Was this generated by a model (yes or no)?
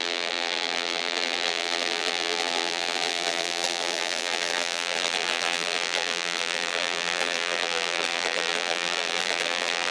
yes